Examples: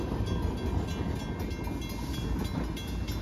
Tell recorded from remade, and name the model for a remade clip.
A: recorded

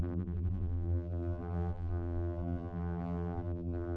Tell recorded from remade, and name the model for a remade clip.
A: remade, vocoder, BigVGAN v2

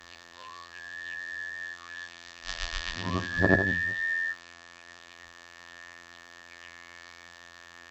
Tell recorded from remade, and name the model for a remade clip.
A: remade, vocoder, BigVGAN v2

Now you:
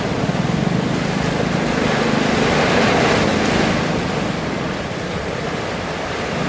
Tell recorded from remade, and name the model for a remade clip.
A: remade, vocoder, BigVGAN v2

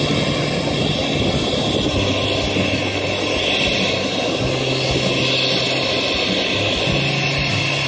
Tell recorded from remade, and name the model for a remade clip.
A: recorded